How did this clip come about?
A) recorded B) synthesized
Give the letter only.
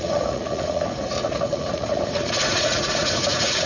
B